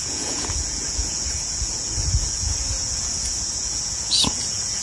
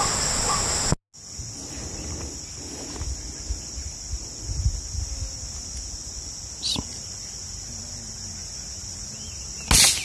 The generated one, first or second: first